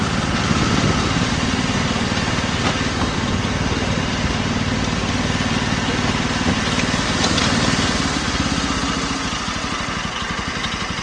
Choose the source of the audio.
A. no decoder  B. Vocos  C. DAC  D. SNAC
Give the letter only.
A